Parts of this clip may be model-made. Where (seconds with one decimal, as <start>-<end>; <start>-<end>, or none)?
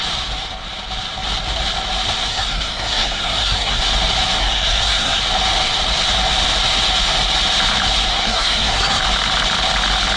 2.3-3.8; 4.4-5.2; 8.1-9.0